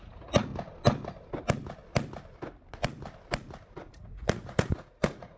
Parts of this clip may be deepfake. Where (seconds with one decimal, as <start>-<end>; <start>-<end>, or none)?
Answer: 0.0-0.5; 3.7-5.4